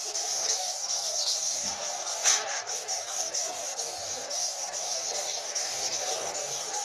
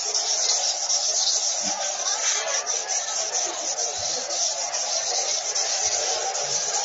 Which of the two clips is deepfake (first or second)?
first